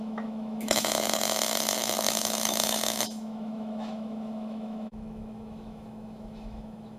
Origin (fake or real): fake